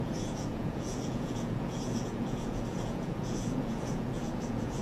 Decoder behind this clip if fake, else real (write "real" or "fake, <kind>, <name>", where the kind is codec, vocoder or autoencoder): fake, vocoder, Vocos